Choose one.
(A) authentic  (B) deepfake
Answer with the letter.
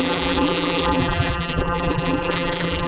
B